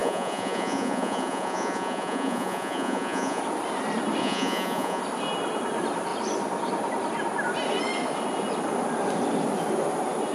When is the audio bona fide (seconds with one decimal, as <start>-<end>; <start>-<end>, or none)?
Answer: 3.4-4.2; 5.0-10.3